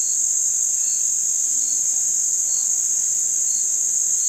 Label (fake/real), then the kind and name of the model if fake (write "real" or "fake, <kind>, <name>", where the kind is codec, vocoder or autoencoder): real